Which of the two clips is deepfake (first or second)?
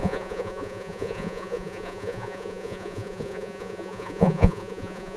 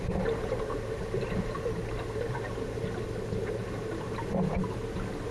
first